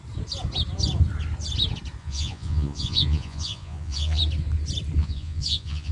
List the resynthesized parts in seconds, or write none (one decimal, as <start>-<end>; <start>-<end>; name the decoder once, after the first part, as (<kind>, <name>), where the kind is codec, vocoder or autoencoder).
2.0-4.2 (vocoder, Vocos); 5.0-5.9